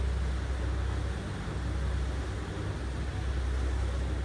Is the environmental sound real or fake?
real